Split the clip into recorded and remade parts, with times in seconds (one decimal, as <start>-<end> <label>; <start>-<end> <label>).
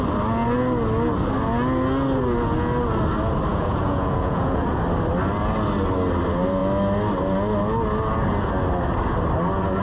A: 0.0-3.5 recorded; 3.5-4.8 remade; 4.8-9.8 recorded